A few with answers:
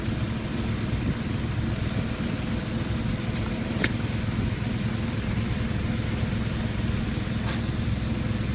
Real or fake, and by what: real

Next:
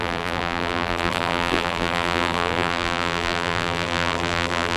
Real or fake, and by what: fake, vocoder, BigVGAN v2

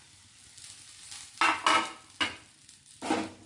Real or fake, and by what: real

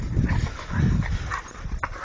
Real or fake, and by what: real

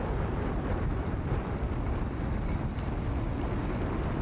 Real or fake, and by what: real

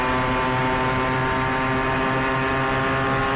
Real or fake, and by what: real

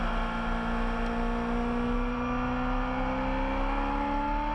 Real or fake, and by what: real